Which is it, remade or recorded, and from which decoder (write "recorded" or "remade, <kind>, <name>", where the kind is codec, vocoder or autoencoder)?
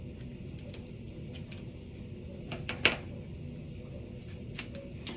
recorded